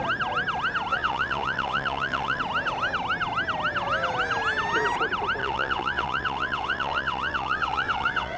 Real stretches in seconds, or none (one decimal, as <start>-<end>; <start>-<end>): 0.0-0.9; 2.4-5.4